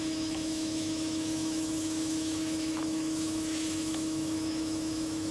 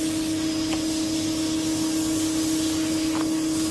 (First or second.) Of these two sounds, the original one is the second